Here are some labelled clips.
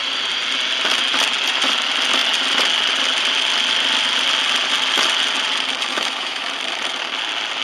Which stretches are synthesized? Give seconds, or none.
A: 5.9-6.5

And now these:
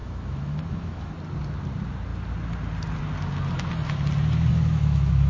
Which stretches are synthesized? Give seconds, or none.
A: 0.0-1.1; 4.5-5.3